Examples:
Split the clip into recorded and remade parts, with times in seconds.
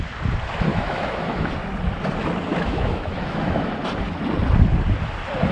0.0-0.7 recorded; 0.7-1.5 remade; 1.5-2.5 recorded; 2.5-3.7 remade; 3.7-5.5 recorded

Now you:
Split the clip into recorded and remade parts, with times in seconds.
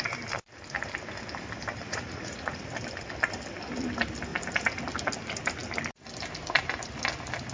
0.0-1.8 recorded; 1.8-2.7 remade; 2.7-7.5 recorded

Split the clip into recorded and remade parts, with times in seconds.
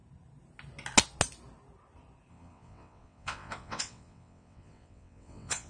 0.0-2.3 recorded; 2.3-5.7 remade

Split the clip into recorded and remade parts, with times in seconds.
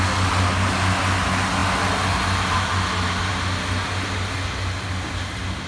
0.0-5.7 recorded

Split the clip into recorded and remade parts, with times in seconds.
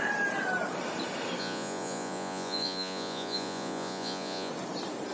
0.0-1.4 recorded; 1.4-4.5 remade; 4.5-5.1 recorded